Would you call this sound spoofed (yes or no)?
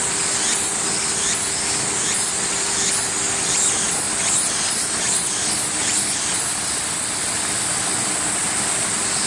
no